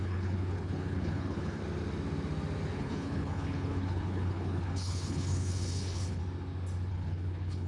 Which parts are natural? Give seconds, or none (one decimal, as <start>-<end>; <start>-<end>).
1.6-2.8; 6.2-6.9